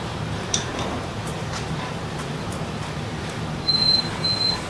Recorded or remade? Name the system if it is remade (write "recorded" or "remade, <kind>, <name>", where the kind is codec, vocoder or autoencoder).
remade, vocoder, BigVGAN v2